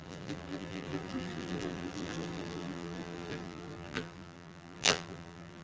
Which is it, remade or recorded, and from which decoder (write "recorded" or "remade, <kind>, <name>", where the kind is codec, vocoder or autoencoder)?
remade, vocoder, BigVGAN v2